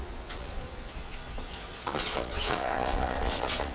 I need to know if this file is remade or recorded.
remade